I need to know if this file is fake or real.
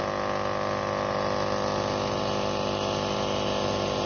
real